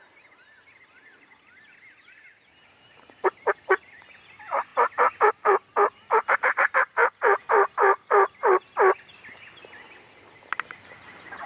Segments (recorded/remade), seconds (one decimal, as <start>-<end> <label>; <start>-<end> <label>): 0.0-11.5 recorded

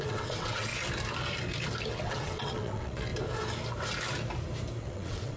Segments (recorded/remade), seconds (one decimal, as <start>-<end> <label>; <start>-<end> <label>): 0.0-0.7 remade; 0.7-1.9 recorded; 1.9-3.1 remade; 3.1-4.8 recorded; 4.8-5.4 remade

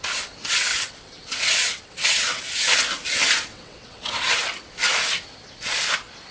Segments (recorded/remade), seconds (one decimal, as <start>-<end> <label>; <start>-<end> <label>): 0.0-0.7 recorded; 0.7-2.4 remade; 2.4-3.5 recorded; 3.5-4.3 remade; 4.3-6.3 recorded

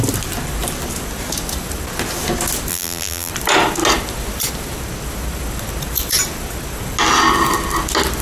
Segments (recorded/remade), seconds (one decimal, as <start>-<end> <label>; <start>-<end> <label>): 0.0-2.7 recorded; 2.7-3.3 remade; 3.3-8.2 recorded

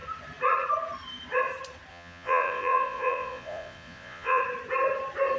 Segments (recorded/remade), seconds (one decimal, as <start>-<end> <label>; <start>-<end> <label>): 0.0-1.9 recorded; 1.9-4.4 remade; 4.4-5.4 recorded

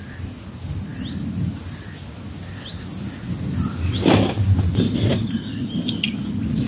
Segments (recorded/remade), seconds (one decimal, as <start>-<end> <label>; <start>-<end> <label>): 0.0-6.7 recorded